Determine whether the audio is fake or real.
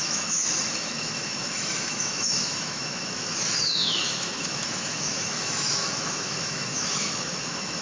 fake